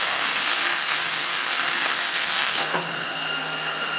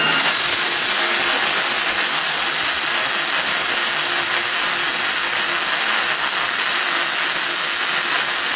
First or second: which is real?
second